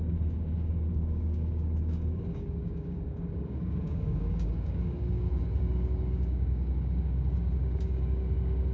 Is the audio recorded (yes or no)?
no